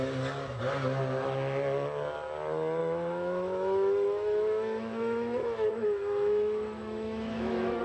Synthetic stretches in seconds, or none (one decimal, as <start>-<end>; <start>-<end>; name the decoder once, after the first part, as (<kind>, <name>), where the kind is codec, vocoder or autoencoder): 2.8-7.8 (autoencoder, DAC-VAE)